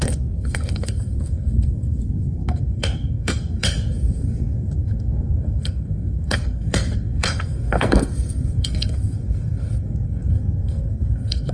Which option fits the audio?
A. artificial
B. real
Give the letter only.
A